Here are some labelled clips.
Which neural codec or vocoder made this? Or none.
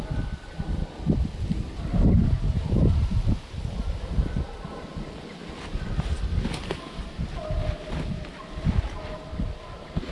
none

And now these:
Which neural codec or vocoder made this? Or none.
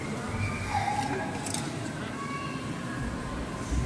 none